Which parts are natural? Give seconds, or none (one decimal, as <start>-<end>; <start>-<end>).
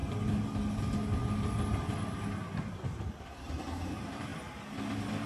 0.0-3.2; 4.3-5.3